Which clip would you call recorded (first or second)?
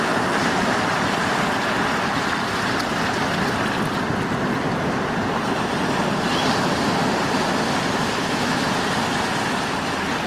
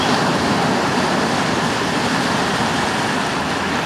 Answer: first